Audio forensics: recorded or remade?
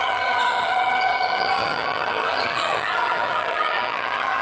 remade